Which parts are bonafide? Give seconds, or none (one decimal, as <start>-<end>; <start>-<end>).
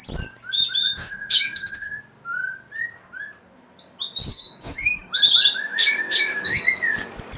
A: 0.0-0.9; 2.0-4.3; 5.2-5.7; 6.6-7.4